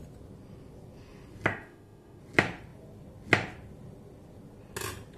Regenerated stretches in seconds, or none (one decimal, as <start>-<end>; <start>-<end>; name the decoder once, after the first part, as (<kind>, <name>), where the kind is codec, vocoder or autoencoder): 1.5-2.2 (autoencoder, DAC-VAE)